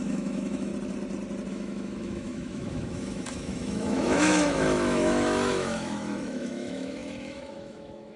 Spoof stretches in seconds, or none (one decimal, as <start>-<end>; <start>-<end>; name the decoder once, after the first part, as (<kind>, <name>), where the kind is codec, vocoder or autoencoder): 0.0-0.7 (autoencoder, DAC-VAE); 1.5-8.2